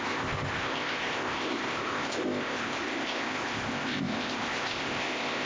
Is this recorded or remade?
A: remade